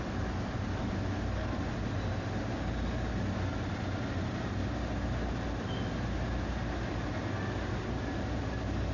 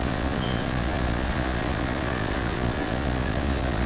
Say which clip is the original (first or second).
first